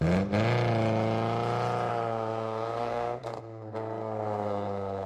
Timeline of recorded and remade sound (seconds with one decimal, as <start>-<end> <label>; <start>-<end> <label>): 0.0-1.9 recorded; 1.9-5.1 remade